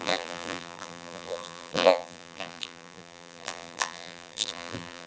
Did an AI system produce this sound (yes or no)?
yes